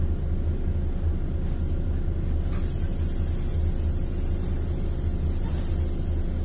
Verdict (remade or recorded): recorded